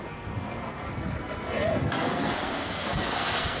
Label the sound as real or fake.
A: fake